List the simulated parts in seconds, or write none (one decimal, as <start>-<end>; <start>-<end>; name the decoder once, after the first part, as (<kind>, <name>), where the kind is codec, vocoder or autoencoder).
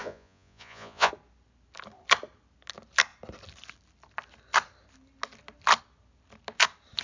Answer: 0.0-1.1 (vocoder, Vocos)